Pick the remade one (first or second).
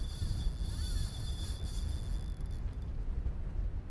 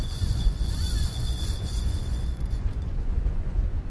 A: second